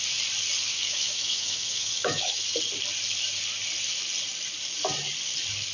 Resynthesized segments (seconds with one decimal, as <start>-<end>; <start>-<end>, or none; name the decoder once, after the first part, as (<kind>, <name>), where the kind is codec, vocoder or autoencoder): 0.7-2.4 (autoencoder, DAC-VAE)